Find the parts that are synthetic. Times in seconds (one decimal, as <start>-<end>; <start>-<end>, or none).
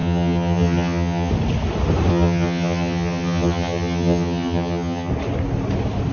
0.0-1.3; 2.1-5.1